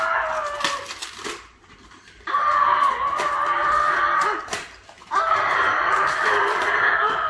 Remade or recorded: recorded